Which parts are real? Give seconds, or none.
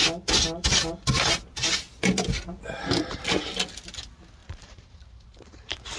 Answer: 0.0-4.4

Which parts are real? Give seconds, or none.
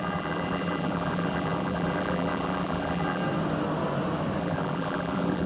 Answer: 3.2-4.4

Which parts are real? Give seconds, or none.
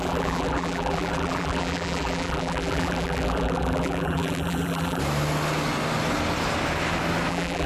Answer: 5.0-7.3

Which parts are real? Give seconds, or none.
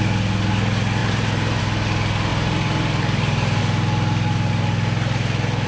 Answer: 0.0-1.0; 1.6-2.3; 3.6-5.7